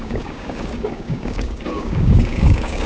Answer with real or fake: fake